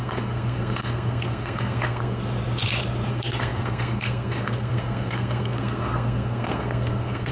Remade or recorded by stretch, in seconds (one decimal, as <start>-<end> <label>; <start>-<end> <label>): 0.0-2.2 remade; 2.2-3.1 recorded; 3.1-7.3 remade